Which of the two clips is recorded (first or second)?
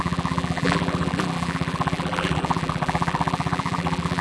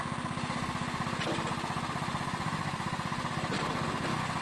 second